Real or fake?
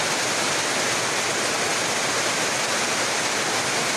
real